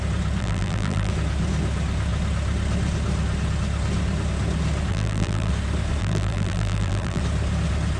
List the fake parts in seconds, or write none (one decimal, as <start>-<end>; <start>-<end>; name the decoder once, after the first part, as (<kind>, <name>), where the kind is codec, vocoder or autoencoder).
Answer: 0.4-1.1 (vocoder, BigVGAN v2); 4.9-5.5; 6.0-7.2